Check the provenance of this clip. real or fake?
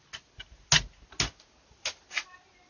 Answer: real